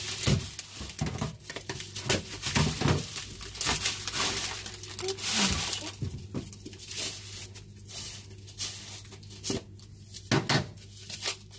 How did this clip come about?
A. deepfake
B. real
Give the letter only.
B